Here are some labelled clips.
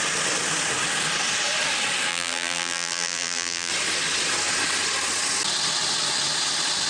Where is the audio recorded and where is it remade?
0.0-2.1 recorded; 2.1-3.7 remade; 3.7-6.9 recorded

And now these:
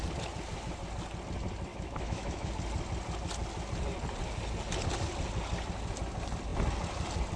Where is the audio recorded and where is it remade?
0.0-1.7 recorded; 1.7-2.5 remade; 2.5-7.4 recorded

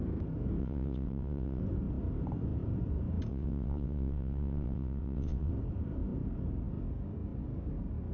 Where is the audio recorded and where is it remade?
0.0-0.6 recorded; 0.6-1.6 remade; 1.6-3.3 recorded; 3.3-5.5 remade; 5.5-8.1 recorded

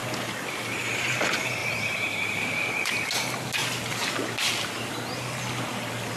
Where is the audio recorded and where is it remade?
0.0-1.6 recorded; 1.6-2.9 remade; 2.9-6.2 recorded

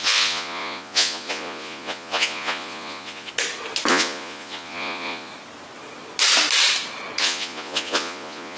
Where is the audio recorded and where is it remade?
0.0-3.3 remade; 3.3-3.9 recorded; 3.9-5.3 remade; 5.3-7.2 recorded; 7.2-8.6 remade

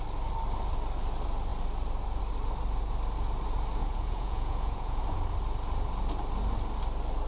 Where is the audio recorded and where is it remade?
0.0-3.8 recorded; 3.8-5.0 remade; 5.0-7.3 recorded

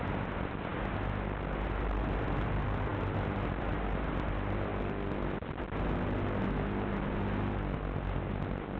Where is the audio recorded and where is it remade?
0.0-8.8 recorded